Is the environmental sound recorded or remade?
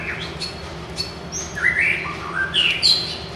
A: recorded